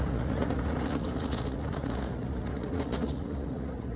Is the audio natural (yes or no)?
no